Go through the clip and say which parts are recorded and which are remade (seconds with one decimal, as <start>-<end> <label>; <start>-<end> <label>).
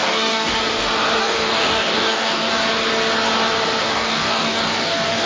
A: 0.0-0.6 remade; 0.6-1.2 recorded; 1.2-2.5 remade; 2.5-3.8 recorded; 3.8-5.3 remade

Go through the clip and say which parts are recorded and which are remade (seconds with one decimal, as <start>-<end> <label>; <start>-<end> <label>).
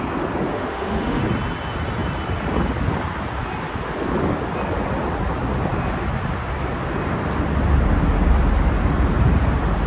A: 0.0-0.5 recorded; 0.5-1.2 remade; 1.2-9.9 recorded